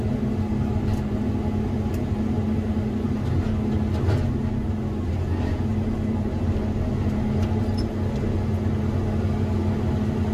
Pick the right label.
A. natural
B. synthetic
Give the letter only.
A